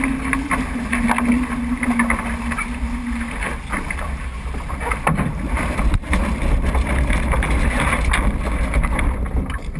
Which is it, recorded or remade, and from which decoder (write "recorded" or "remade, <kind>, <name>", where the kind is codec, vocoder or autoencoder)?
recorded